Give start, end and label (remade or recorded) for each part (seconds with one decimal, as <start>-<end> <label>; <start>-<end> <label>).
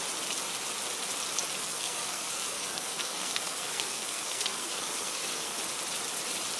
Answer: 0.0-1.6 recorded; 1.6-5.6 remade; 5.6-6.6 recorded